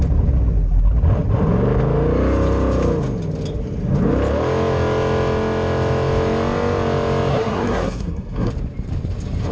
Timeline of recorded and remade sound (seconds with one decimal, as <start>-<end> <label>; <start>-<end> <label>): 0.0-7.3 recorded; 7.3-8.5 remade; 8.5-9.5 recorded